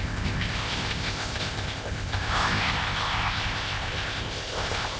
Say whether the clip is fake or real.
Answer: fake